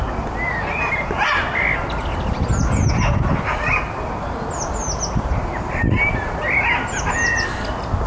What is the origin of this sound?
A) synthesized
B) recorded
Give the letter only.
B